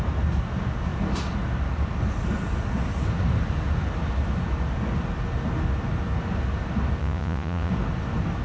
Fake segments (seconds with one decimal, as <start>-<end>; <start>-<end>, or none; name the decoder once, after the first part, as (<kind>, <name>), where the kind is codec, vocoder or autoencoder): 7.0-7.7 (vocoder, Vocos)